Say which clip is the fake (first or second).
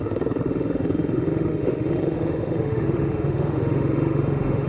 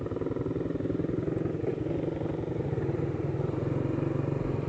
first